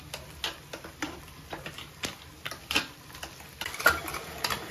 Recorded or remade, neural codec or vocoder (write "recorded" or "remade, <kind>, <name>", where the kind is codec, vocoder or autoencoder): recorded